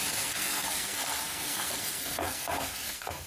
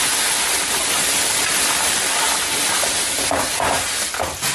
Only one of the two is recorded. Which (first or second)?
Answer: second